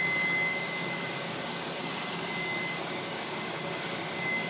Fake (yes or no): yes